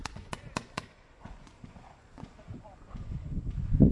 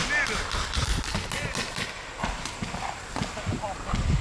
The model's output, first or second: first